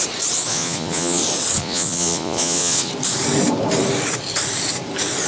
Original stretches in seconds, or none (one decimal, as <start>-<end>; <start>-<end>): 0.0-0.5; 1.2-1.6; 2.9-5.3